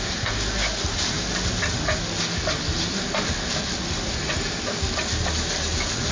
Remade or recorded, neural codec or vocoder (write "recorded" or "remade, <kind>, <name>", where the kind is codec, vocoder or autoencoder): recorded